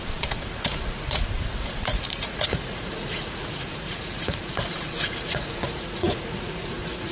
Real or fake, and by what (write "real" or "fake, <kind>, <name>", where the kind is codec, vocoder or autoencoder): fake, vocoder, Vocos